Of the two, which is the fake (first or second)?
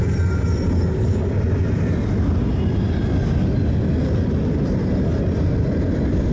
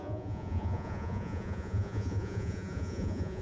second